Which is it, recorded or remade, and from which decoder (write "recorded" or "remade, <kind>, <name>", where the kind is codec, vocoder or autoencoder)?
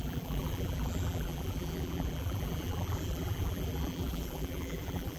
remade, vocoder, BigVGAN v2